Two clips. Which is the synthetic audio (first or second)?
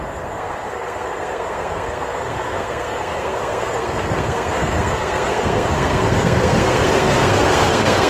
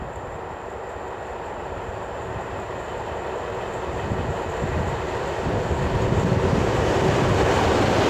first